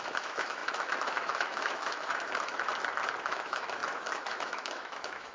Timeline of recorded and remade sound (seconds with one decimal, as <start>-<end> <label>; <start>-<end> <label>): 0.0-2.7 remade; 2.7-3.3 recorded; 3.3-5.3 remade